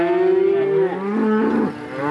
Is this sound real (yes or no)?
yes